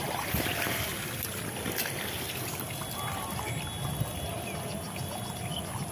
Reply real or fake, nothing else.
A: real